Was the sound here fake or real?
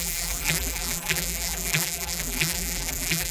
fake